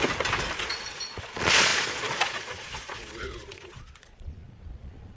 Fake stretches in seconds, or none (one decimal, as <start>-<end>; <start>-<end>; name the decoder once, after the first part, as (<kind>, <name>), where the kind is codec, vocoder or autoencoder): 0.6-5.2 (vocoder, Vocos)